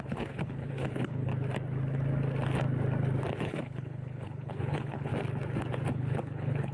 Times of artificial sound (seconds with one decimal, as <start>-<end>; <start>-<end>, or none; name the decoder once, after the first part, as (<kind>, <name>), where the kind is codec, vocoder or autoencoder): 0.0-1.3 (codec, HILCodec); 3.4-5.1; 5.9-6.7

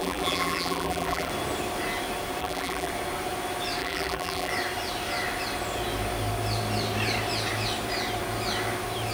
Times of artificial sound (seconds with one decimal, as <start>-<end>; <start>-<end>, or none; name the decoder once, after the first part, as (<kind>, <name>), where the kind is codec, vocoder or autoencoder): 0.0-1.3 (vocoder, BigVGAN v2); 2.4-2.9; 3.8-4.5

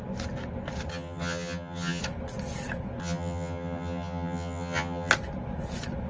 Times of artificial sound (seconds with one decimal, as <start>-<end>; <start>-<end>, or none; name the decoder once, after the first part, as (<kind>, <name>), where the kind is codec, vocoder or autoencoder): 0.9-2.0 (vocoder, HiFi-GAN); 3.0-5.1

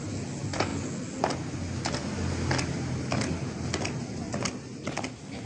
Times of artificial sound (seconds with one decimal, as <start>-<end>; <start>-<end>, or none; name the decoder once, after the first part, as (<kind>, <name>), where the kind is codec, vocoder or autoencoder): none

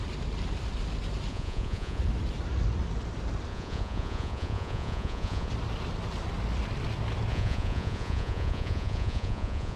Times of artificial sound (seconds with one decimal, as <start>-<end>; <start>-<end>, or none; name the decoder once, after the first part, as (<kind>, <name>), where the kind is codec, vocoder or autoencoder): 1.3-2.0 (vocoder, Vocos); 3.5-5.5; 7.3-9.8

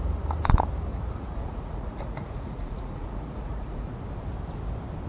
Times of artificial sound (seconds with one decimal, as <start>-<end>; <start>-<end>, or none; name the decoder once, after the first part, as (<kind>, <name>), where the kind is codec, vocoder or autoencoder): 0.9-4.0 (vocoder, Vocos)